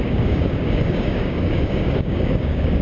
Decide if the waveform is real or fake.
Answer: fake